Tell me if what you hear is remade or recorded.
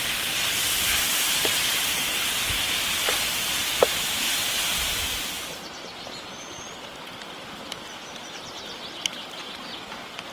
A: recorded